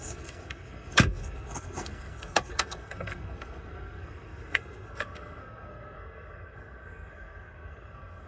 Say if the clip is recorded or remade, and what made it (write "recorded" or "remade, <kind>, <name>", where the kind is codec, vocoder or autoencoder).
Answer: remade, codec, SNAC